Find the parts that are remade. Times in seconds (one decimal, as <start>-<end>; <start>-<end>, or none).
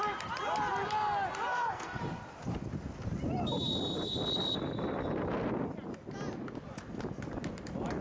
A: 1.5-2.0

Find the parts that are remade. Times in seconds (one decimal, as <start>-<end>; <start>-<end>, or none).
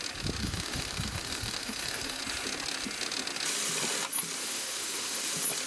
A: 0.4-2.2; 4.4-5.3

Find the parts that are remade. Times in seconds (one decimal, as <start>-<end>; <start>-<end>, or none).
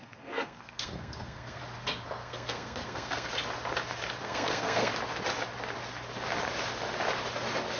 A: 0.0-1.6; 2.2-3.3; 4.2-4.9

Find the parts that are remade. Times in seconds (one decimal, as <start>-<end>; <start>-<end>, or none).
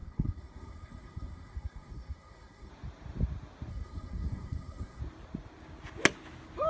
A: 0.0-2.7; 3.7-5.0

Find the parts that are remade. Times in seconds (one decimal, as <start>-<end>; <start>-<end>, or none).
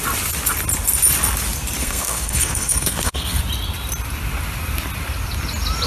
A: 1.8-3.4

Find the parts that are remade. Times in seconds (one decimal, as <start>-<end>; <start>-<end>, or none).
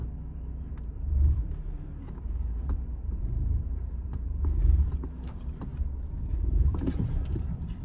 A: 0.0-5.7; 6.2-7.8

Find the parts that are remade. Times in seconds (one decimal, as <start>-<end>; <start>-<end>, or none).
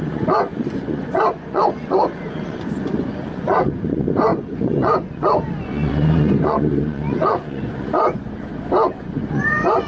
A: 0.0-8.5; 9.1-9.9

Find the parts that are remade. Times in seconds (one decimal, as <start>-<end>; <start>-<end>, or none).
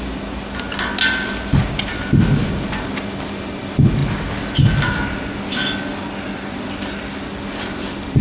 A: none